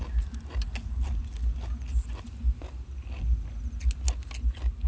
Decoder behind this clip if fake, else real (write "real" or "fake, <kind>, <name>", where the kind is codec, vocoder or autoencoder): real